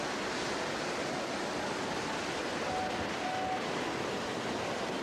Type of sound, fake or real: real